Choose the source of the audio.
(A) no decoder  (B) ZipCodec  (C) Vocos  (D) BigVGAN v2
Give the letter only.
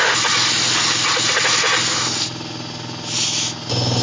A